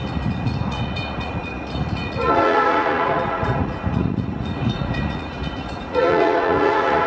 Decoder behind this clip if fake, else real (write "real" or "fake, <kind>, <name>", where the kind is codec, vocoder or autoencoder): fake, vocoder, Vocos